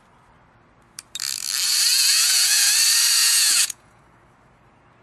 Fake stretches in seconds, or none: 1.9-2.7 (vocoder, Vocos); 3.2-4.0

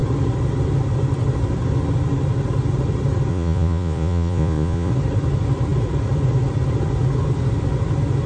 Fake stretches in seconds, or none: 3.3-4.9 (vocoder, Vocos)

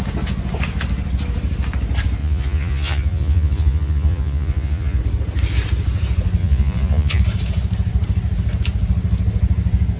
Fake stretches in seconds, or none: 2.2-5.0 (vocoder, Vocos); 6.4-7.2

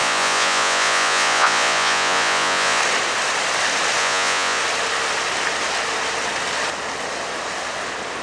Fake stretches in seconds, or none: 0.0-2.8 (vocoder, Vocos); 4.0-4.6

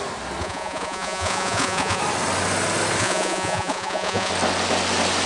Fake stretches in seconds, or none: 0.4-2.0 (vocoder, Vocos); 3.0-4.3

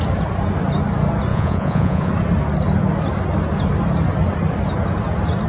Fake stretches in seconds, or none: 1.3-2.1 (vocoder, Vocos)